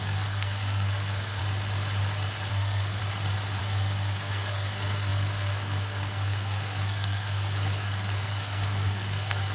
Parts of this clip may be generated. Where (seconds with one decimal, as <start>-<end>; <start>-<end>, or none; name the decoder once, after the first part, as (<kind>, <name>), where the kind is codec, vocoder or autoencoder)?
0.0-1.4 (codec, SNAC); 2.5-3.0; 3.6-9.5